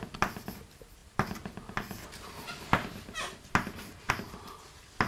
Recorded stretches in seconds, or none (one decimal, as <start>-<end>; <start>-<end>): 0.0-5.1